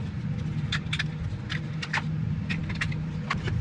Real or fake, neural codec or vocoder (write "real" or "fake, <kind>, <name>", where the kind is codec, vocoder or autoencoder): real